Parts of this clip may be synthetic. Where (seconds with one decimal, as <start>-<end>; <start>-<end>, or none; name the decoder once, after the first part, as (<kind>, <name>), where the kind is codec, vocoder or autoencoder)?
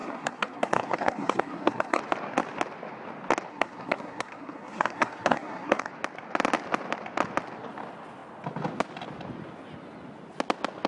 0.0-2.0 (codec, SNAC); 3.5-5.9